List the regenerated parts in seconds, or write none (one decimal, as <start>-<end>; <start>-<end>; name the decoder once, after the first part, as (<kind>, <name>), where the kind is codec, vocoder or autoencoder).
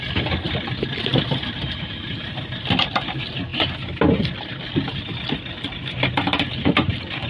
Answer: none